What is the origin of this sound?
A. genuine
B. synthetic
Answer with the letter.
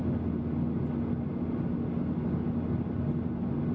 A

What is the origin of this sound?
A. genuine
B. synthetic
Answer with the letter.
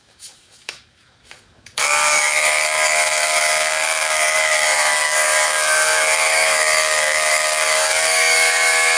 B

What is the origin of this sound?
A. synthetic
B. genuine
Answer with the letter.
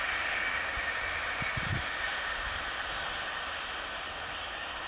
B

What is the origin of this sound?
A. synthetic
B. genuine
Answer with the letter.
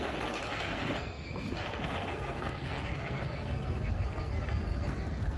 A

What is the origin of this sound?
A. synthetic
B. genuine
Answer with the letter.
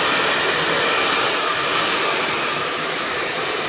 B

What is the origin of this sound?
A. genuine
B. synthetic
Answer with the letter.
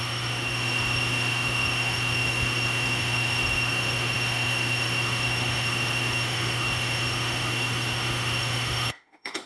B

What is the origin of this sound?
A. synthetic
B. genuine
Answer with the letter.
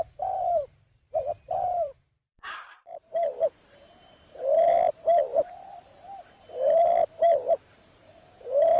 A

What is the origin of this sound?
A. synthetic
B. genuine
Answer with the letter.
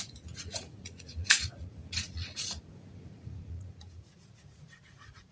A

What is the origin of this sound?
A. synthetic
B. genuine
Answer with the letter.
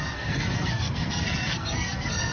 A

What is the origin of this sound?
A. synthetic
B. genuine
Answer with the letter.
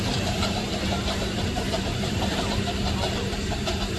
A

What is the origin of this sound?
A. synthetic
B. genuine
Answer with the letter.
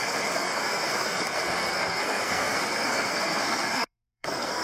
A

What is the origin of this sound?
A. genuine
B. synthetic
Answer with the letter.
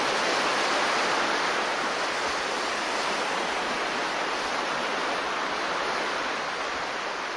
A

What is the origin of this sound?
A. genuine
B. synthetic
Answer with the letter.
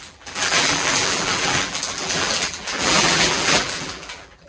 B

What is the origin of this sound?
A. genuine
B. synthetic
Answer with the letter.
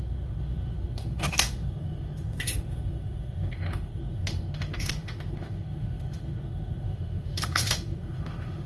B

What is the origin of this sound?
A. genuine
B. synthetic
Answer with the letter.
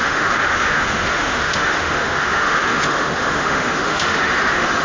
B